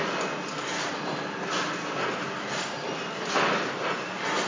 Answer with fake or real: real